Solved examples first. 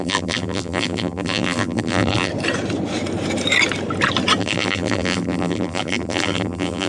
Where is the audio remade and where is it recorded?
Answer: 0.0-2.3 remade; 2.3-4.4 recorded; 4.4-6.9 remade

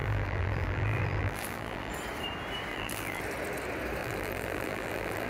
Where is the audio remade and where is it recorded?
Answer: 0.0-1.9 remade; 1.9-2.7 recorded; 2.7-3.2 remade; 3.2-4.0 recorded; 4.0-5.3 remade

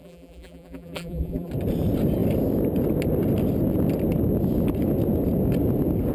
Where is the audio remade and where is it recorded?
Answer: 0.0-1.5 remade; 1.5-6.1 recorded

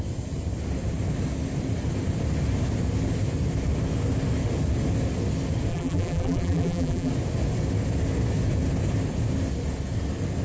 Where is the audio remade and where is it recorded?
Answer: 0.0-5.7 recorded; 5.7-7.1 remade; 7.1-10.4 recorded

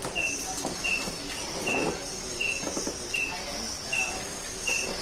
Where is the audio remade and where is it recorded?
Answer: 0.0-0.9 remade; 0.9-5.0 recorded

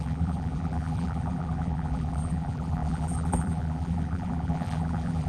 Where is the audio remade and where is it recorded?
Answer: 0.0-5.3 remade

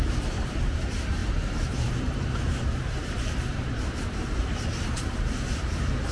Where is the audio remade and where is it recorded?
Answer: 0.0-6.1 remade